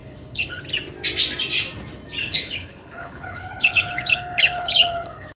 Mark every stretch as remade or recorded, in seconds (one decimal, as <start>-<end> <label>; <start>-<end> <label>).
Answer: 0.0-0.6 remade; 0.6-2.2 recorded; 2.2-5.4 remade